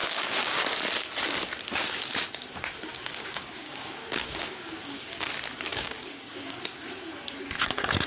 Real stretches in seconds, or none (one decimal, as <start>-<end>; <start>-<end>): 0.6-2.9; 5.3-5.7; 6.6-8.1